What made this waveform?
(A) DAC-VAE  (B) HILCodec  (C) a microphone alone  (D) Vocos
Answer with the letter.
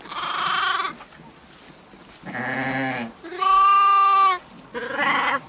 C